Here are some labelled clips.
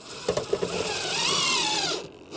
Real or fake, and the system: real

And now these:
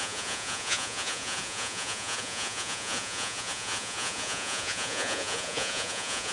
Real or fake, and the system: fake, vocoder, Vocos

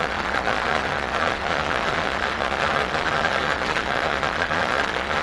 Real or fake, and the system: fake, vocoder, Vocos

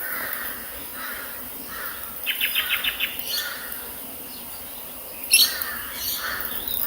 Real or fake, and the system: real